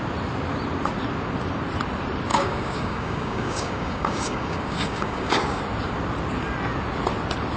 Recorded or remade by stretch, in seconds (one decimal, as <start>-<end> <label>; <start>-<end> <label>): 0.0-2.3 recorded; 2.3-5.6 remade; 5.6-7.6 recorded

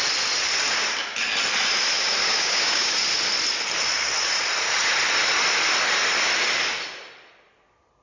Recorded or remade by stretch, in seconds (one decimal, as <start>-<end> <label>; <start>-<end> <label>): 0.0-2.2 recorded; 2.2-3.0 remade; 3.0-8.0 recorded

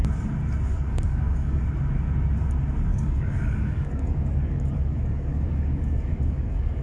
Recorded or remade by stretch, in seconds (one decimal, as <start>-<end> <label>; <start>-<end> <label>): 0.0-0.7 recorded; 0.7-1.6 remade; 1.6-2.9 recorded; 2.9-6.8 remade

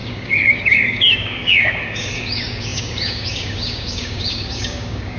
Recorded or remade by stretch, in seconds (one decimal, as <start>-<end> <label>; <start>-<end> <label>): 0.0-5.2 remade

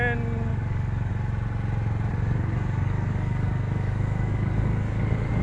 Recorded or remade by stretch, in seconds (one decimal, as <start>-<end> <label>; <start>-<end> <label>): 0.0-0.5 recorded; 0.5-1.1 remade; 1.1-2.1 recorded; 2.1-5.4 remade

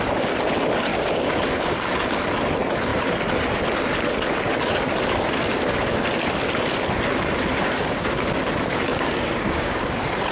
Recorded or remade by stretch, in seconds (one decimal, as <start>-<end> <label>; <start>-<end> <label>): 0.0-0.9 recorded; 0.9-1.8 remade; 1.8-8.9 recorded; 8.9-9.9 remade; 9.9-10.3 recorded

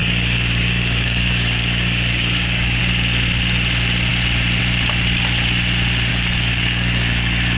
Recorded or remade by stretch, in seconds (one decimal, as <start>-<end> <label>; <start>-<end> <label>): 0.0-2.8 remade; 2.8-6.1 recorded; 6.1-7.6 remade

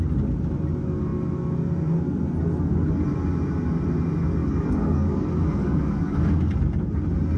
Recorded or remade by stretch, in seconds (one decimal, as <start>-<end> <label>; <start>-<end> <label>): 0.0-4.4 recorded; 4.4-6.6 remade; 6.6-7.4 recorded